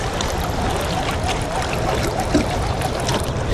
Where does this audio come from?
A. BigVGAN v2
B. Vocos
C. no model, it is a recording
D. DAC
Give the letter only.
C